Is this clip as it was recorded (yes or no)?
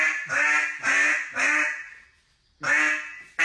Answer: yes